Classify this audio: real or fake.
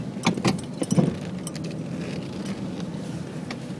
real